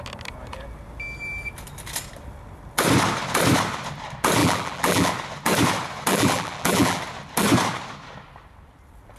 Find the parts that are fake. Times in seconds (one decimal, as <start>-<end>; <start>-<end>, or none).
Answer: 4.4-5.1; 6.1-7.0